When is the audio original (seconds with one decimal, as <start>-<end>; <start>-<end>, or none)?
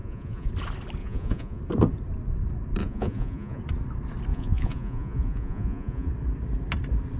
0.5-1.0; 1.6-2.8; 3.6-4.3; 6.1-7.2